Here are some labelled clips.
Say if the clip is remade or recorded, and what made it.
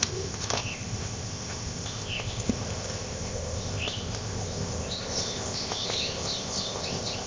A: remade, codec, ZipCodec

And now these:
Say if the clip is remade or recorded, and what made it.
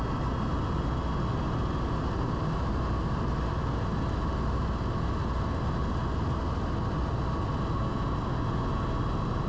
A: recorded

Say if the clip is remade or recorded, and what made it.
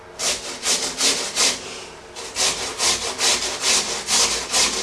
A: recorded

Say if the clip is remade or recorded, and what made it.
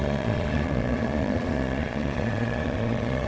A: remade, vocoder, Vocos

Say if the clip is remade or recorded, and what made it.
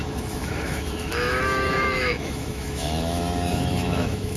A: remade, autoencoder, DAC-VAE